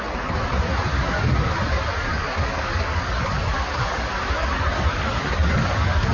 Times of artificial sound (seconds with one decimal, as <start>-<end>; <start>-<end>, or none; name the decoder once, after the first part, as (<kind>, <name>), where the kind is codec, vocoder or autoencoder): 0.9-1.5 (codec, DAC); 2.1-6.1